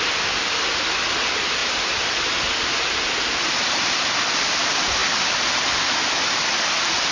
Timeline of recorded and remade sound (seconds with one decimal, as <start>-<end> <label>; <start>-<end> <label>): 0.0-1.6 recorded; 1.6-2.3 remade; 2.3-7.1 recorded